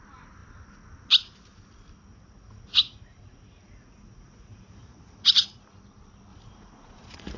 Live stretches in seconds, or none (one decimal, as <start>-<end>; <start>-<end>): 0.0-2.1; 5.7-6.3